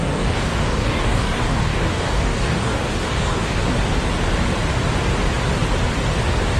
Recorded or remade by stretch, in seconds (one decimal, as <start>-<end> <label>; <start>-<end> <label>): 0.0-3.6 remade; 3.6-6.6 recorded

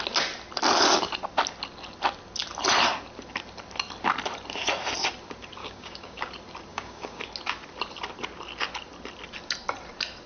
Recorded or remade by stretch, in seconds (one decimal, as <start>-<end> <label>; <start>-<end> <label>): 0.0-5.6 recorded; 5.6-6.3 remade; 6.3-6.7 recorded; 6.7-7.2 remade; 7.2-10.3 recorded

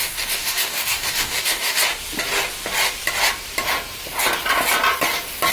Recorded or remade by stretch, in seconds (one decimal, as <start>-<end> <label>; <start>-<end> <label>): 0.0-1.9 remade; 1.9-5.5 recorded

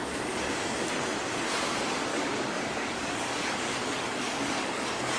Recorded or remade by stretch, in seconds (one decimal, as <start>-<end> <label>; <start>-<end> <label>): 0.0-0.9 remade; 0.9-2.1 recorded; 2.1-5.2 remade